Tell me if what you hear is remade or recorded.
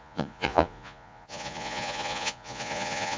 remade